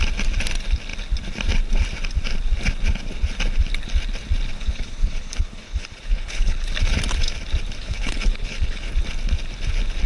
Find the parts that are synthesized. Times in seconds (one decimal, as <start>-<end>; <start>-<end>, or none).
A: 4.5-6.7; 7.8-8.9